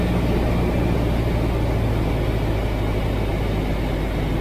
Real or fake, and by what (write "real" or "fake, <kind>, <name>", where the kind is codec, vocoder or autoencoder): real